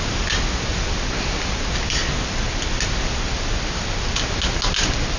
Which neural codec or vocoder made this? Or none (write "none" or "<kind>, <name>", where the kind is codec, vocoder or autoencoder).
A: none